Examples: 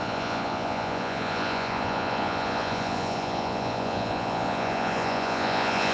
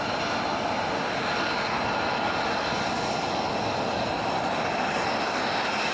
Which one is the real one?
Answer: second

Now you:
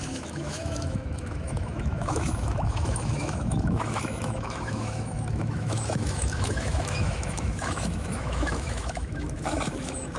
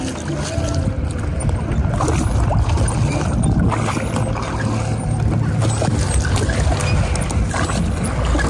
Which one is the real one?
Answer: second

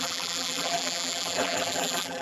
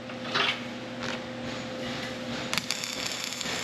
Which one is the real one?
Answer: second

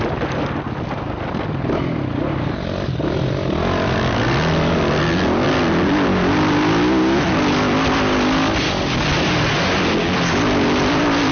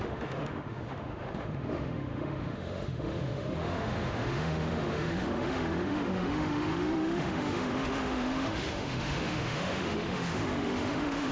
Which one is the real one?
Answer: first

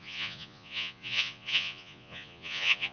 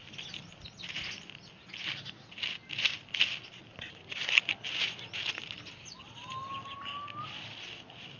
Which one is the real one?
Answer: second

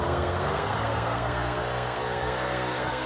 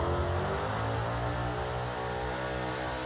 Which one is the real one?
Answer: second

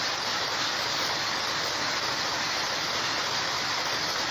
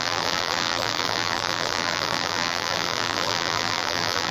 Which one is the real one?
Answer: first